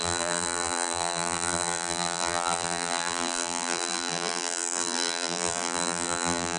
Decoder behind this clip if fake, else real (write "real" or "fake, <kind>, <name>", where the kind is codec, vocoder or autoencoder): fake, vocoder, BigVGAN v2